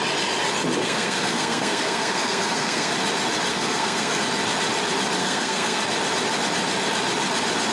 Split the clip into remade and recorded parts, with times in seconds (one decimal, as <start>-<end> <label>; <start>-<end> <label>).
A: 0.0-0.8 recorded; 0.8-2.9 remade; 2.9-3.5 recorded; 3.5-4.2 remade; 4.2-5.2 recorded; 5.2-5.8 remade; 5.8-7.7 recorded